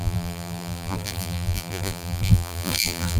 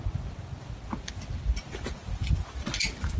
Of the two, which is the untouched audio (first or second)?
second